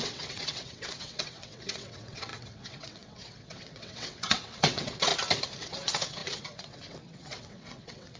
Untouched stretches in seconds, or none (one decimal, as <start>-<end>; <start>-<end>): 5.1-5.6